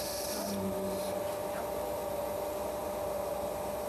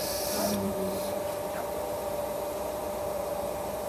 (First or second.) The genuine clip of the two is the first